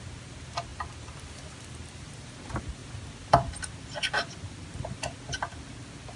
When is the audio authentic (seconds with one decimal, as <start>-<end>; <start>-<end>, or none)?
0.0-6.2